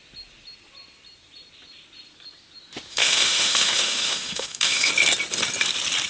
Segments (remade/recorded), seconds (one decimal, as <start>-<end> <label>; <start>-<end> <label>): 0.0-2.9 recorded; 2.9-4.9 remade; 4.9-6.1 recorded